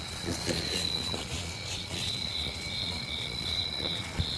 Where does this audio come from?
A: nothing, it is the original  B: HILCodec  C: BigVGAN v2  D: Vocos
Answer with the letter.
D